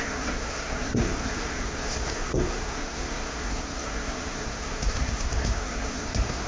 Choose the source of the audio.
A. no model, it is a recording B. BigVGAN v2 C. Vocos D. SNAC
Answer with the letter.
D